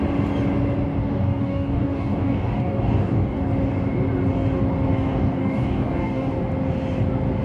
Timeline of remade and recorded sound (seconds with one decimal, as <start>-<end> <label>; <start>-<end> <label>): 0.0-1.0 recorded; 1.0-3.5 remade; 3.5-4.9 recorded; 4.9-6.3 remade; 6.3-7.4 recorded